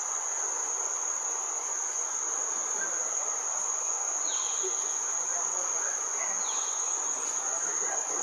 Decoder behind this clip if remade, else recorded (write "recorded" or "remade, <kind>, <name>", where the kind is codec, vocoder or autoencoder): remade, vocoder, Vocos